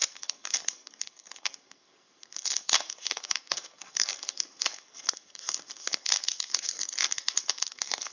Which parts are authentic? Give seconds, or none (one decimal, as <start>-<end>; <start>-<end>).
none